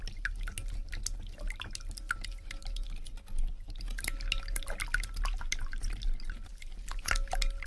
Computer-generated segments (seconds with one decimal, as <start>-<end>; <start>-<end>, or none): none